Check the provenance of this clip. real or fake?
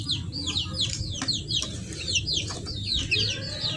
real